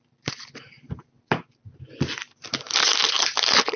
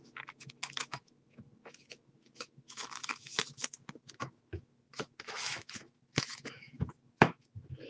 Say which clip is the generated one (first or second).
second